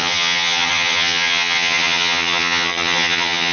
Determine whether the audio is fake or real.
fake